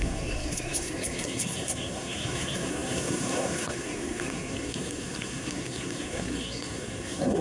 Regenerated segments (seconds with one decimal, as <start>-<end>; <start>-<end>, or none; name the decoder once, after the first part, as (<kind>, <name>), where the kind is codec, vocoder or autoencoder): 0.0-7.4 (codec, SNAC)